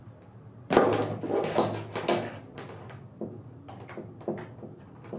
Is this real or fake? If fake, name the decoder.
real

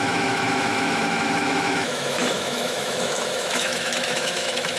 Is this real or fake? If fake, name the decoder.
fake, autoencoder, DAC-VAE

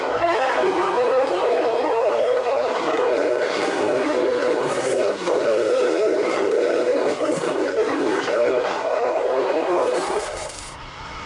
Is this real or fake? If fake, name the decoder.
fake, codec, SNAC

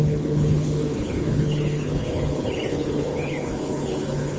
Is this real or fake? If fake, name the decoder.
fake, codec, HILCodec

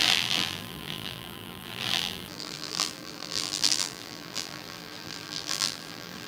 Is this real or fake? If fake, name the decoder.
fake, vocoder, BigVGAN v2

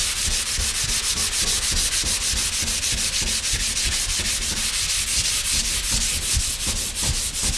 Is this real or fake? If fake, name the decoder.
real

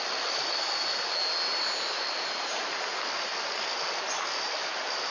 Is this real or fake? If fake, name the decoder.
real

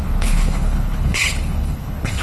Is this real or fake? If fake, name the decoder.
fake, codec, HILCodec